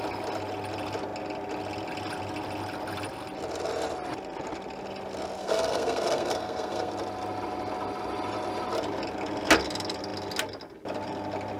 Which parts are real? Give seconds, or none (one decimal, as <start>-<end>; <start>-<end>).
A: 0.0-5.4; 6.9-11.6